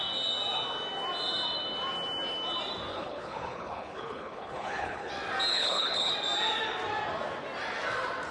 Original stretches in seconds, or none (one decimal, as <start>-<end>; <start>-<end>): 0.0-2.9; 5.1-5.5; 6.1-8.3